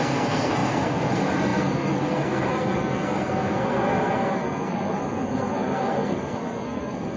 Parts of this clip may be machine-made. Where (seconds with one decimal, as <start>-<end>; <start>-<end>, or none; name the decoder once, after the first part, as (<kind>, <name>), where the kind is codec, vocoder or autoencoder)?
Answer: 0.0-7.2 (codec, SNAC)